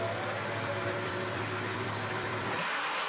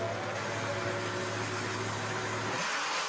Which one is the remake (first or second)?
first